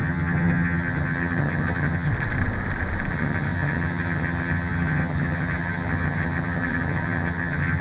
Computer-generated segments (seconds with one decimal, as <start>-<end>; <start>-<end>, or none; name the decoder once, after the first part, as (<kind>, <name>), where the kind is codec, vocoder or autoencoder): 0.0-2.1 (vocoder, HiFi-GAN); 3.1-7.8